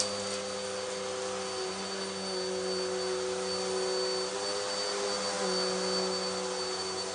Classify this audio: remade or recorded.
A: recorded